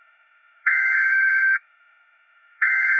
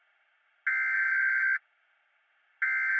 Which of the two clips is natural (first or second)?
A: second